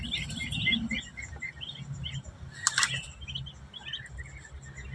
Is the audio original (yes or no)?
yes